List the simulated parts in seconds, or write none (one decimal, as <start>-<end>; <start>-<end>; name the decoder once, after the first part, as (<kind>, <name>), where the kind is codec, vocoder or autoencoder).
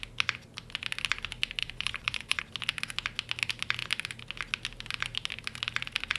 1.6-2.4 (vocoder, Vocos)